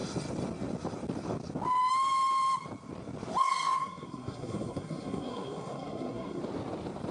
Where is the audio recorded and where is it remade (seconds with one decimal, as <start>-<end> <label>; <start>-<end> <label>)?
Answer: 0.0-3.4 recorded; 3.4-6.4 remade; 6.4-7.1 recorded